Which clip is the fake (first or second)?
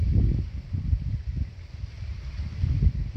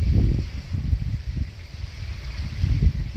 first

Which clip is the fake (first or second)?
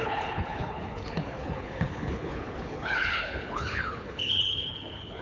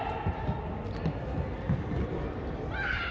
first